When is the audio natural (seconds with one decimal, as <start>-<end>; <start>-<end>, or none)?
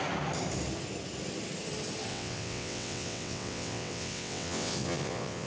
0.0-2.1